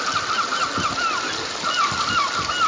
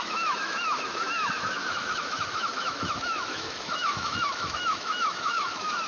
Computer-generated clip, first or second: second